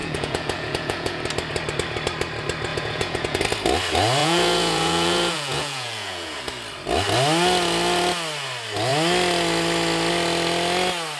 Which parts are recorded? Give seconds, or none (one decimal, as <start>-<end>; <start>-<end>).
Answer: 1.2-2.7; 3.4-4.2; 6.4-11.2